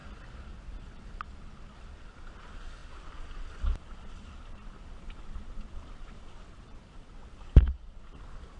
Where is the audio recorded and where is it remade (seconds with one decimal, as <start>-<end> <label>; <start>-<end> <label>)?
0.0-8.6 recorded